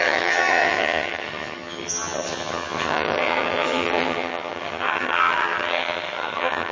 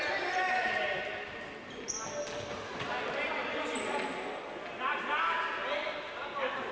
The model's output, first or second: first